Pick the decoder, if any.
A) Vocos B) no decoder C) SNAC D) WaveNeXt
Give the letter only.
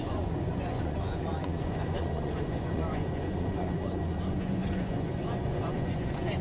A